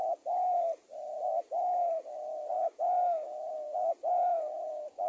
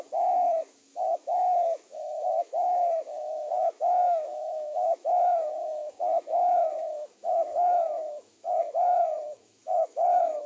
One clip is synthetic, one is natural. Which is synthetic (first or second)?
second